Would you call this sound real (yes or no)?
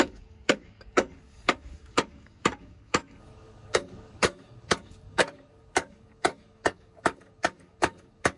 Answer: no